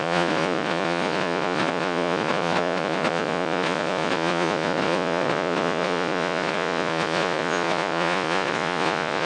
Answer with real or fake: fake